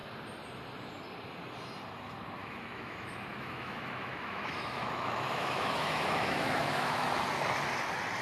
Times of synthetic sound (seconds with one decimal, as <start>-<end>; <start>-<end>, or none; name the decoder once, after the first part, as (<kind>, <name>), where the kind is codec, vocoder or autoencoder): 2.4-7.2 (autoencoder, DAC-VAE)